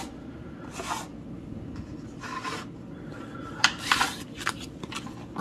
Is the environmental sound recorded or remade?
recorded